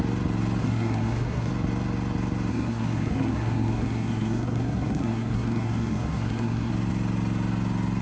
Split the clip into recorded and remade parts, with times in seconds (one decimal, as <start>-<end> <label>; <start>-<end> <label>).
0.0-0.6 recorded; 0.6-1.5 remade; 1.5-2.5 recorded; 2.5-6.7 remade; 6.7-8.0 recorded